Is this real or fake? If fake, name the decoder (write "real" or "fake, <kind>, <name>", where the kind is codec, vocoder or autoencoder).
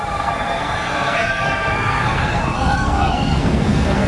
fake, codec, SNAC